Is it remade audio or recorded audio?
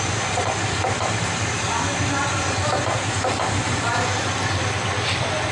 recorded